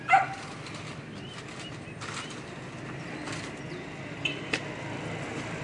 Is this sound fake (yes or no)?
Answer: no